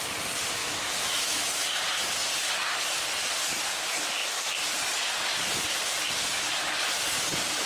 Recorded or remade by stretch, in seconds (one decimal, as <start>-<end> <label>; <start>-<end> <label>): 0.0-0.6 recorded; 0.6-1.4 remade; 1.4-7.7 recorded